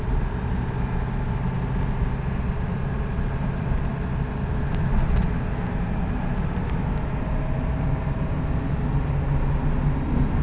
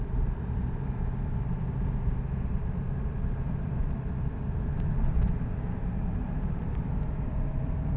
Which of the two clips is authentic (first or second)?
first